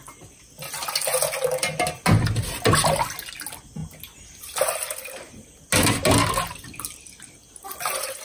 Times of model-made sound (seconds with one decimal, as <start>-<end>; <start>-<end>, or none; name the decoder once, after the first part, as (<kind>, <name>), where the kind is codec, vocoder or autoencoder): none